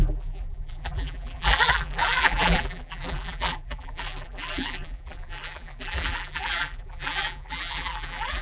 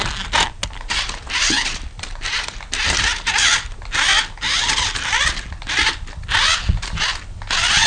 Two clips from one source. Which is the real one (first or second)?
second